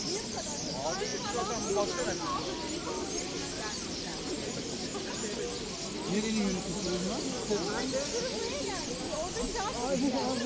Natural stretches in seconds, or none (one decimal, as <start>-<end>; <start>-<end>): 0.0-10.5